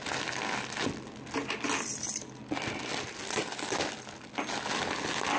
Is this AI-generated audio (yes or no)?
no